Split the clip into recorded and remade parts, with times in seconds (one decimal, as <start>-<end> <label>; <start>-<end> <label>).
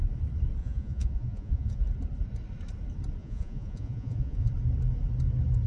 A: 0.0-0.6 recorded; 0.6-1.8 remade; 1.8-3.2 recorded; 3.2-4.5 remade; 4.5-5.7 recorded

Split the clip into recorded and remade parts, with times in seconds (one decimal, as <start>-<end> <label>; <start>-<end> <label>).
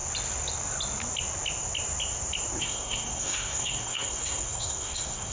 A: 0.0-2.6 recorded; 2.6-5.3 remade